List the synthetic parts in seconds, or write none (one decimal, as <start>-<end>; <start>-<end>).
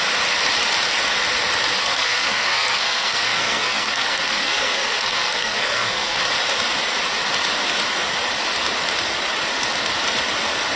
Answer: 1.8-6.2